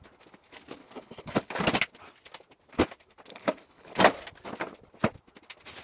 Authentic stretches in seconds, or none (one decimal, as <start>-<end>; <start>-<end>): 0.0-0.8; 1.6-3.3; 4.0-5.8